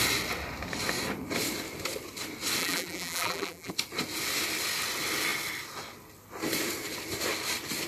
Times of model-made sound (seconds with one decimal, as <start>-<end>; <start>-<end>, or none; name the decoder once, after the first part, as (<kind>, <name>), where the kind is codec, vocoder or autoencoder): 2.6-3.7 (vocoder, BigVGAN v2)